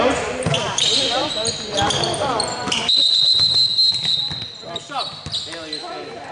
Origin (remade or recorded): recorded